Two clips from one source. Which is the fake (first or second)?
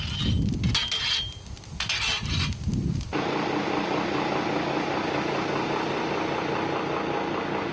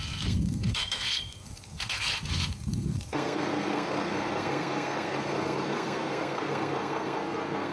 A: second